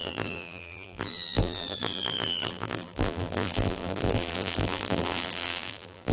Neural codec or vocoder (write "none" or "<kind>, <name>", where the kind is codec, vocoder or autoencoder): vocoder, BigVGAN v2